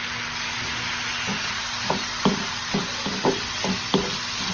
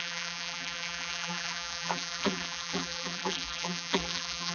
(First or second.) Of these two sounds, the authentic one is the first